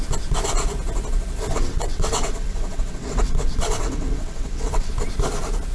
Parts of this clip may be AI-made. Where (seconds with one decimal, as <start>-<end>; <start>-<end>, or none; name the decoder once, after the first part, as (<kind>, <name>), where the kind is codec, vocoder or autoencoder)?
1.5-4.9 (vocoder, WaveNeXt)